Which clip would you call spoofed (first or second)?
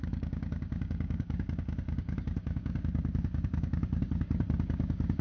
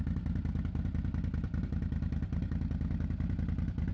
first